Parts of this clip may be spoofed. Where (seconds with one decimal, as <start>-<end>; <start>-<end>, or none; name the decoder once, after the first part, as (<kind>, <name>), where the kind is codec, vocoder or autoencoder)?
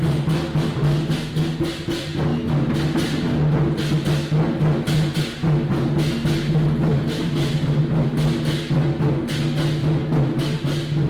6.9-7.8 (vocoder, BigVGAN v2)